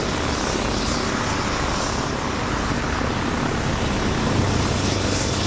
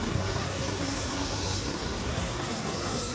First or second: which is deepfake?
second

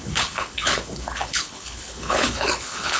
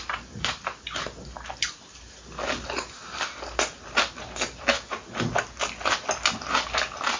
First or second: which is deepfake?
first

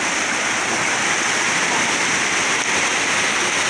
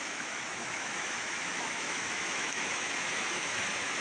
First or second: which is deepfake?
second